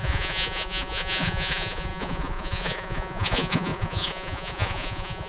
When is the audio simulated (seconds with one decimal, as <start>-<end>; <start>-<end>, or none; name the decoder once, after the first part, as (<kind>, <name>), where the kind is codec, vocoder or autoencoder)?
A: 0.0-5.3 (vocoder, Vocos)